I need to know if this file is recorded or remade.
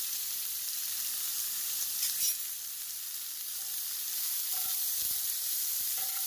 remade